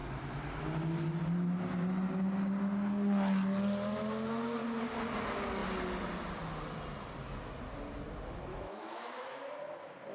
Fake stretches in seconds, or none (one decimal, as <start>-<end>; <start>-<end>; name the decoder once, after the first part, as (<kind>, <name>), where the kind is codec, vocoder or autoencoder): 8.5-9.3 (autoencoder, DAC-VAE)